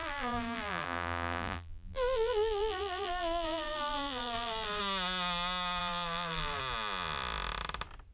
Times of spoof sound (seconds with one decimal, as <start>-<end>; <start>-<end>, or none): 0.0-4.8; 5.8-6.6